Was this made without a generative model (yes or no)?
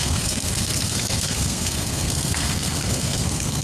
no